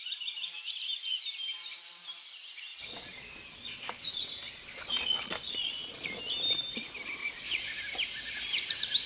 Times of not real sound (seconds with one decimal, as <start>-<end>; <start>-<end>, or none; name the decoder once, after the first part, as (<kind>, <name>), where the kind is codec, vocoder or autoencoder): 2.7-6.2 (vocoder, Vocos); 7.2-7.8